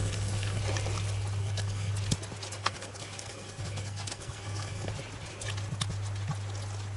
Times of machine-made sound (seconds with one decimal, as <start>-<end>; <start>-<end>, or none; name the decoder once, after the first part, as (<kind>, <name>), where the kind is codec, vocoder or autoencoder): 0.0-0.6 (codec, SNAC); 1.4-1.9; 2.6-4.9